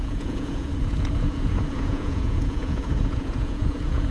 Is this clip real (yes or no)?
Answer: no